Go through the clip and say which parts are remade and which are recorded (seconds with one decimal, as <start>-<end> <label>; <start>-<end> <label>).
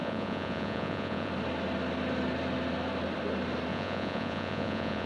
0.0-1.3 remade; 1.3-3.7 recorded; 3.7-5.1 remade